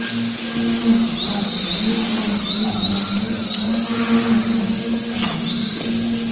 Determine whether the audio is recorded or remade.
recorded